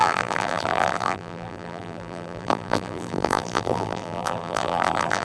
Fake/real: fake